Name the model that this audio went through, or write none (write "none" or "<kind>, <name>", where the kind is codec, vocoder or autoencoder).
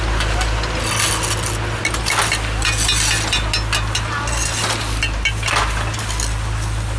none